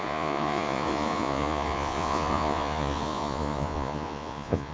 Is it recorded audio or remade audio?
remade